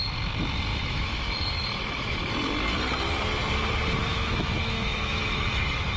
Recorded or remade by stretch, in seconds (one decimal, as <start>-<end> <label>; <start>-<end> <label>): 0.0-0.7 recorded; 0.7-2.3 remade; 2.3-4.1 recorded; 4.1-6.0 remade